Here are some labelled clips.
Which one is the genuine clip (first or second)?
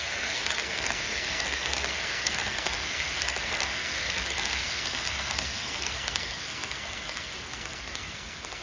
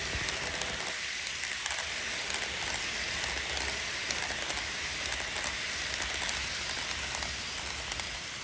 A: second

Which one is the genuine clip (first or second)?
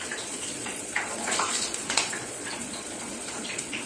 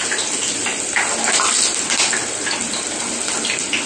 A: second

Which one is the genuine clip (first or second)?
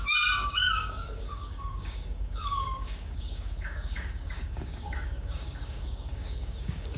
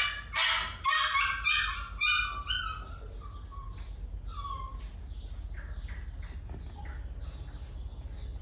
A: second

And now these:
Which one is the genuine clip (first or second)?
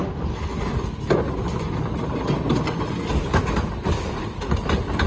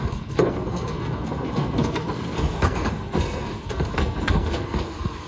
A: first